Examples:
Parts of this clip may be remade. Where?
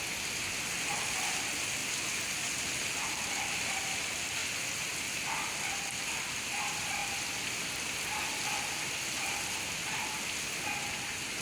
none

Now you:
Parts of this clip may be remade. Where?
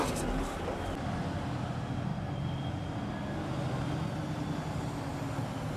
2.1-2.9 (vocoder, BigVGAN v2)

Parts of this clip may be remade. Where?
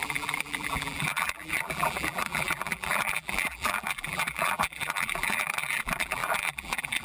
0.0-7.0 (vocoder, BigVGAN v2)